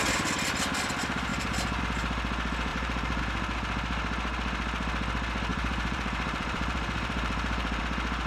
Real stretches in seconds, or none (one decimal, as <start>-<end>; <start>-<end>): 0.0-2.7; 3.2-5.5; 7.8-8.3